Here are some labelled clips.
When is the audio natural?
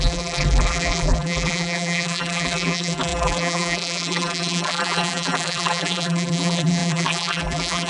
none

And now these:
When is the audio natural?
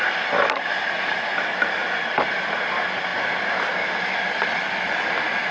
0.0-5.5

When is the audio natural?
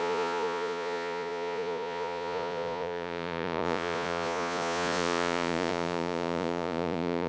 none